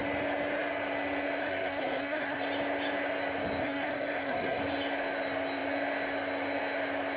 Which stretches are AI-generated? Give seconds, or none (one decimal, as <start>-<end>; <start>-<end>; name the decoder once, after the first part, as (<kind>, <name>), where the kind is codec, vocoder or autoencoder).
1.4-2.4 (codec, SNAC); 3.6-4.6